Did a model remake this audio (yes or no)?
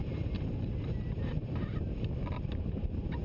yes